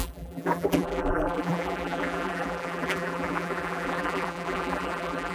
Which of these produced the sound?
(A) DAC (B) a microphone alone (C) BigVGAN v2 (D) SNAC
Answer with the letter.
C